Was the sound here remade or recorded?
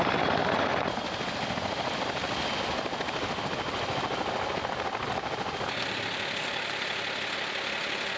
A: recorded